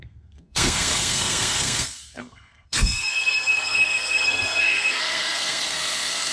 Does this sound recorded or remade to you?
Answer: remade